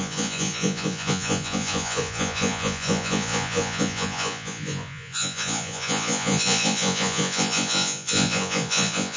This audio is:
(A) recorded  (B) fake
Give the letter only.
B